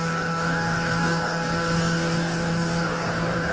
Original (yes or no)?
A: no